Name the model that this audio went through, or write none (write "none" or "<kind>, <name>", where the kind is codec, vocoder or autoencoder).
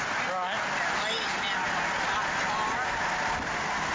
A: none